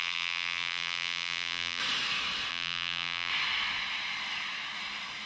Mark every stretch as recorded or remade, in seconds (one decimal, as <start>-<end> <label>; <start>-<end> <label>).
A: 0.0-1.8 remade; 1.8-2.5 recorded; 2.5-3.3 remade; 3.3-5.3 recorded